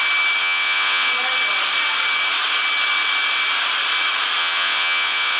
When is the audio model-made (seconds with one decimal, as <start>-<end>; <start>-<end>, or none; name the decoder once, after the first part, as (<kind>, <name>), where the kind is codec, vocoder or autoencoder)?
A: 0.4-1.1 (vocoder, WaveNeXt); 4.4-5.4